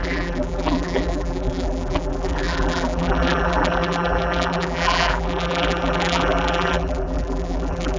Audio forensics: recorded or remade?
remade